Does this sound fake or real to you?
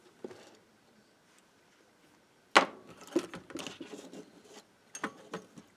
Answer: real